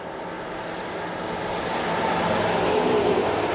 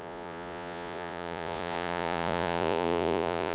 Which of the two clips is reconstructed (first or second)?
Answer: second